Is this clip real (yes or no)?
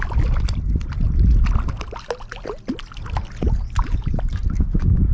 yes